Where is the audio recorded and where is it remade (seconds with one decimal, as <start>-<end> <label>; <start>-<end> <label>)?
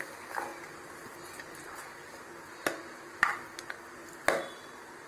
0.0-5.1 recorded